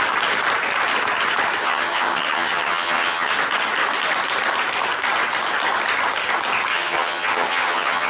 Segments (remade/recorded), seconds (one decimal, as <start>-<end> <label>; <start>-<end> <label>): 0.0-1.6 recorded; 1.6-3.3 remade; 3.3-6.7 recorded; 6.7-8.1 remade